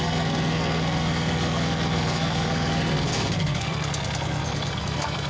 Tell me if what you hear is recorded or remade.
remade